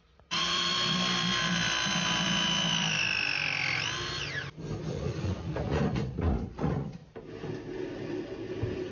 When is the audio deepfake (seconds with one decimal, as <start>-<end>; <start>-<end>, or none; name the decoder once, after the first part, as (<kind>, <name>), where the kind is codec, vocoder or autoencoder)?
0.0-0.7 (vocoder, Vocos); 4.9-7.0